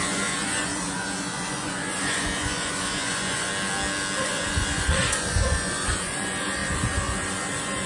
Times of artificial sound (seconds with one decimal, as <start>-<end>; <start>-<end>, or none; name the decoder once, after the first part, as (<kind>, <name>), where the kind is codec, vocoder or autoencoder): 0.0-3.5 (vocoder, Vocos); 4.2-7.9